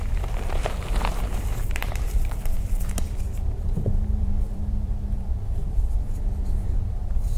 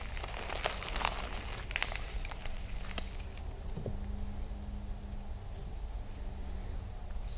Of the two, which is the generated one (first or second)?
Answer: first